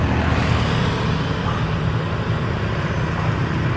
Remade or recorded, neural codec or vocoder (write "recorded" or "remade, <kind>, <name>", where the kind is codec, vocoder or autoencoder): recorded